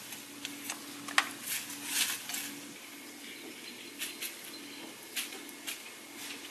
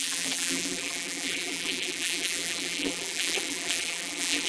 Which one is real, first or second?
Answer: first